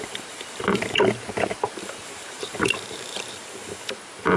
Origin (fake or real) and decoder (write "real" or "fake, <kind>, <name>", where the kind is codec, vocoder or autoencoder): fake, vocoder, BigVGAN v2